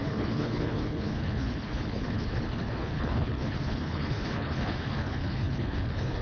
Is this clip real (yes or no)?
no